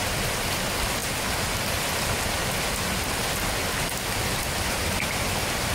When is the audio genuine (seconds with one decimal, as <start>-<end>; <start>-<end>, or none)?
0.0-5.7